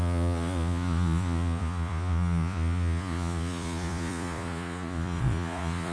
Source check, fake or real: fake